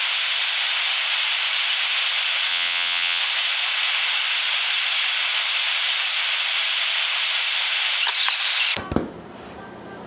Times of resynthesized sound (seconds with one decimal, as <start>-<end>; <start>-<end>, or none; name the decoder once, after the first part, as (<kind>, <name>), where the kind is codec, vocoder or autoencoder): 2.5-3.2 (vocoder, WaveNeXt)